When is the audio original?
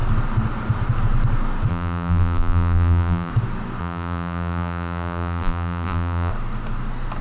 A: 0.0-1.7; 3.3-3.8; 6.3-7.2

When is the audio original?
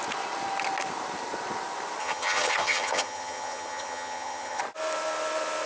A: 0.0-2.0; 4.6-5.7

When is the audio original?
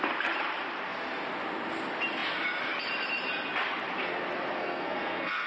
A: 0.0-4.6